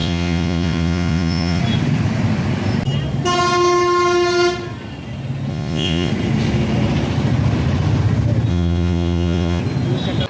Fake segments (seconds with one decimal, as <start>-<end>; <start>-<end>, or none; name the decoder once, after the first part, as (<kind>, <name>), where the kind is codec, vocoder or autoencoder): 0.0-1.6 (vocoder, Vocos); 5.5-6.1; 8.5-9.6